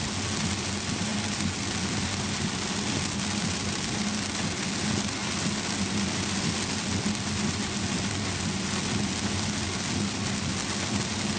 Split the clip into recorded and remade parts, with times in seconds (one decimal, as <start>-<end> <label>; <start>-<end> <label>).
0.0-11.4 recorded